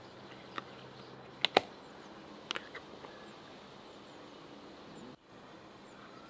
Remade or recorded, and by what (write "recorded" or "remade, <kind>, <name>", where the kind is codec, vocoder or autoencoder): recorded